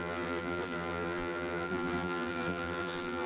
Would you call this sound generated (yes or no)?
yes